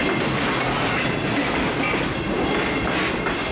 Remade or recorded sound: recorded